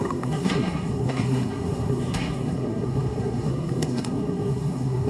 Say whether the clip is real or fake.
fake